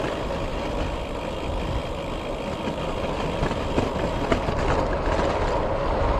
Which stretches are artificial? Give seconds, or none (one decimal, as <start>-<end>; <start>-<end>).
none